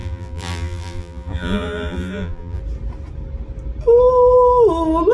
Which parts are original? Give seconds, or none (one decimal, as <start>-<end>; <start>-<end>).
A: 2.6-5.1